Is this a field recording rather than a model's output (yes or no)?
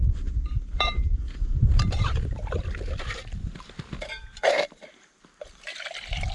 no